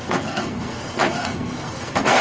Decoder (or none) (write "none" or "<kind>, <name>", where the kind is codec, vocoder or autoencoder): codec, SNAC